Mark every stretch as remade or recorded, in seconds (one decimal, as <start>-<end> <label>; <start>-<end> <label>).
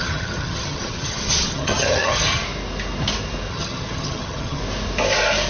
0.0-2.4 remade; 2.4-3.5 recorded; 3.5-4.6 remade; 4.6-5.5 recorded